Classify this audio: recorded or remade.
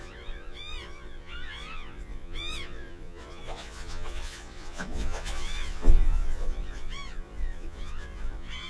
remade